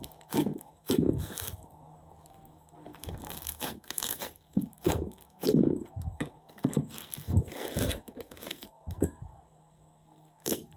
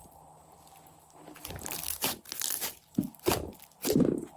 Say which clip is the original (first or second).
second